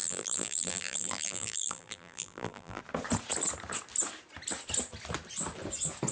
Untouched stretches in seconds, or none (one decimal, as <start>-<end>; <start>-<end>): 2.8-6.1